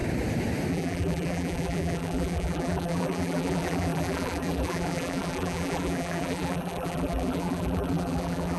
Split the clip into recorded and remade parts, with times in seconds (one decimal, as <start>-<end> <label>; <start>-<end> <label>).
0.0-0.7 recorded; 0.7-8.6 remade